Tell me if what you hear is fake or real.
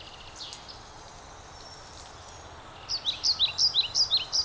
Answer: real